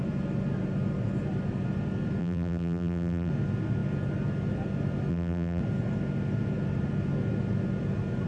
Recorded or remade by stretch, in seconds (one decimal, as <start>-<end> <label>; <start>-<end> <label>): 0.0-2.2 recorded; 2.2-3.3 remade; 3.3-5.1 recorded; 5.1-5.6 remade; 5.6-8.3 recorded